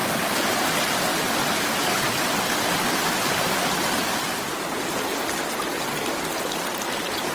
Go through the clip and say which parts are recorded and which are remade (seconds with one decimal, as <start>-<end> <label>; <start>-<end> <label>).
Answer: 0.0-7.3 recorded